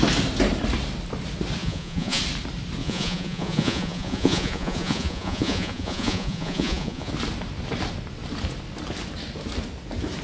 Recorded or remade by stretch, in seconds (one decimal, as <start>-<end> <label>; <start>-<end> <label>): 0.0-1.6 recorded; 1.6-2.2 remade; 2.2-2.8 recorded; 2.8-7.1 remade; 7.1-10.2 recorded